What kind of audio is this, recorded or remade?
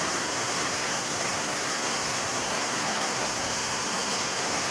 remade